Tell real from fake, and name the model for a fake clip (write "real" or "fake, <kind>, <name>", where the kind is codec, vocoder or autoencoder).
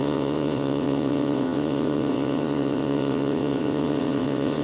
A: fake, vocoder, WaveNeXt